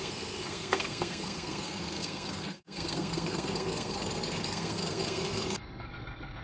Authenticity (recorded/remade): remade